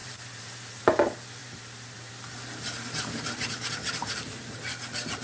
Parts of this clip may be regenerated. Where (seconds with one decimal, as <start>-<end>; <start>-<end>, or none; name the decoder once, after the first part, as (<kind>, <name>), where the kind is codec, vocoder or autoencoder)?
0.0-0.8 (vocoder, BigVGAN v2); 1.4-2.1; 4.0-4.6